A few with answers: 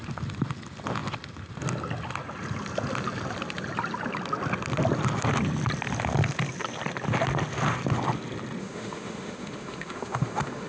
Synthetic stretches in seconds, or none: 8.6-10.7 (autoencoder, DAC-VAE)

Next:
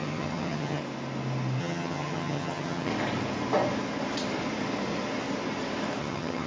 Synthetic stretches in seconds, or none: 0.0-0.8 (vocoder, HiFi-GAN); 1.6-2.9; 6.0-6.5